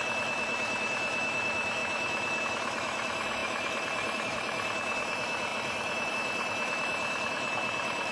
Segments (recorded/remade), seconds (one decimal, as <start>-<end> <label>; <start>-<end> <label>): 0.0-8.1 remade